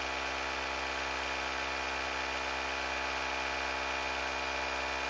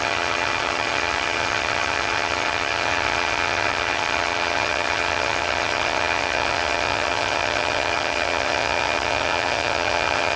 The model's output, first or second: second